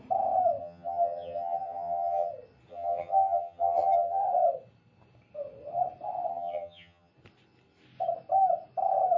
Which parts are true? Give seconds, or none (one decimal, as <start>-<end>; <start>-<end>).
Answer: 0.0-0.6; 2.3-2.7; 4.2-6.3; 7.1-9.2